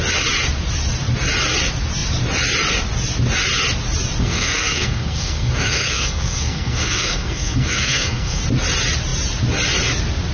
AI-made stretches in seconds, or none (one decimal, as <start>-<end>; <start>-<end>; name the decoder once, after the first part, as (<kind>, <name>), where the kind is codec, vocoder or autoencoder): 4.2-8.4 (codec, SNAC)